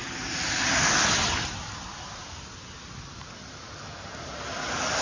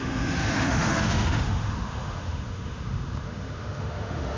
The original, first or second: first